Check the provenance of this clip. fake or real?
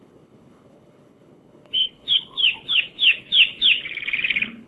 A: fake